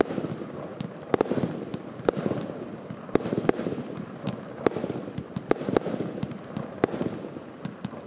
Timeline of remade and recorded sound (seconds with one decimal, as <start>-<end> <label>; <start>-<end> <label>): 0.0-8.1 recorded